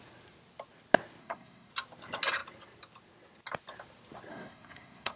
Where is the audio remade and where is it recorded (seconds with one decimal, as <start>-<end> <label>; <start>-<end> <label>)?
0.0-1.2 recorded; 1.2-1.7 remade; 1.7-4.3 recorded; 4.3-5.2 remade